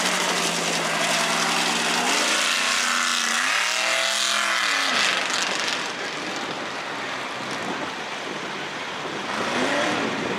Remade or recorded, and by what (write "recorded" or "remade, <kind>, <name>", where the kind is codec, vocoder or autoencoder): recorded